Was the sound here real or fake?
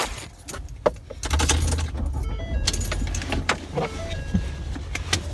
real